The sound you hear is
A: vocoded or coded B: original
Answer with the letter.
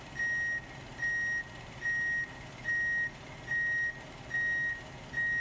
B